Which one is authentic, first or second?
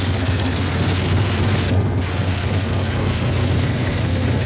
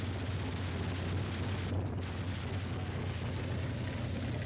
second